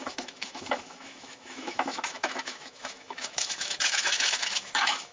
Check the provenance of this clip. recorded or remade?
remade